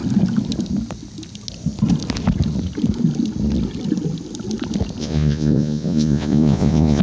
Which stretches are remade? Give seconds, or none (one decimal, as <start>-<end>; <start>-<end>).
5.0-7.0